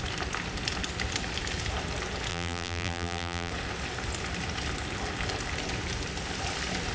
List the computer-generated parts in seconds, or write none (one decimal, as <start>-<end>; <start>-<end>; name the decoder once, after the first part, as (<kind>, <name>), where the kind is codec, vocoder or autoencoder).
2.3-3.5 (vocoder, BigVGAN v2)